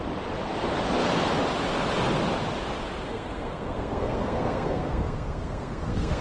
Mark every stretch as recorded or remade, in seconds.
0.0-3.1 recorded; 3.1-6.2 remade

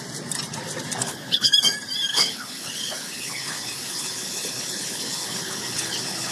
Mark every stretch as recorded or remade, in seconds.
0.0-1.0 recorded; 1.0-1.5 remade; 1.5-2.1 recorded; 2.1-6.3 remade

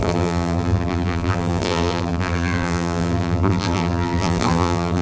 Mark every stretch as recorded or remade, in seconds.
0.0-5.0 remade

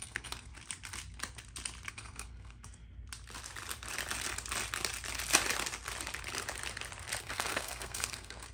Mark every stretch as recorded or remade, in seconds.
0.0-0.5 remade; 0.5-1.9 recorded; 1.9-2.8 remade; 2.8-7.2 recorded; 7.2-8.5 remade

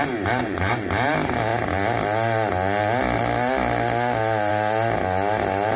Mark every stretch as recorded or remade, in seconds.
0.0-0.4 recorded; 0.4-0.9 remade; 0.9-5.8 recorded

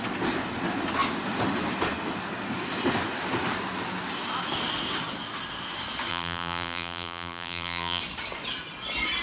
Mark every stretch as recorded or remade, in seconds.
0.0-6.1 recorded; 6.1-8.0 remade; 8.0-9.2 recorded